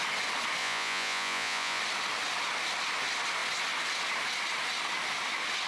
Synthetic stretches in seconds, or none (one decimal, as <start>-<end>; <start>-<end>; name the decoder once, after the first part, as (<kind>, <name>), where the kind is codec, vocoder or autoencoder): 0.6-1.8 (vocoder, Vocos)